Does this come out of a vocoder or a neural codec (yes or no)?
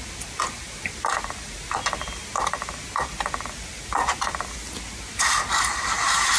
no